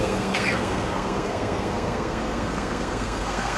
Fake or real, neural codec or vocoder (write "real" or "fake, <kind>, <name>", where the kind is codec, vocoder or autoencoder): fake, codec, SNAC